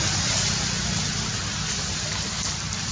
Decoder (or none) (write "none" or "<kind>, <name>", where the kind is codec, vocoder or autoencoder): none